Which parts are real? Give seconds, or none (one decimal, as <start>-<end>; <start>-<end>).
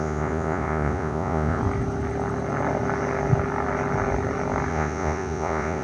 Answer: 1.6-4.7